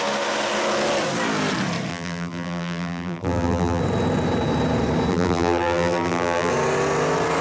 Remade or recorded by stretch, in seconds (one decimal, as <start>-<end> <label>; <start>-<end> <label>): 0.0-1.9 recorded; 1.9-3.8 remade; 3.8-5.1 recorded; 5.1-6.5 remade; 6.5-7.4 recorded